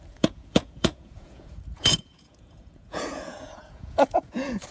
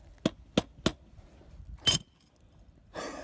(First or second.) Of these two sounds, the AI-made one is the first